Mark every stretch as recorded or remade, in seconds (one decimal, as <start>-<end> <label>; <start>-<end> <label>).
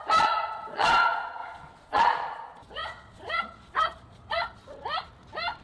0.0-4.6 remade; 4.6-5.6 recorded